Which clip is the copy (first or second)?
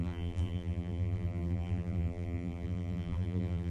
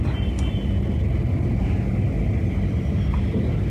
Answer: first